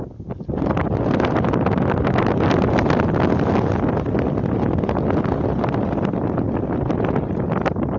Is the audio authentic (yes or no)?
yes